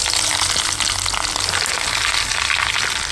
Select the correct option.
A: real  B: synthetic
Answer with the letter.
A